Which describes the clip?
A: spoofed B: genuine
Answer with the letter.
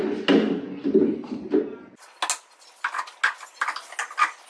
B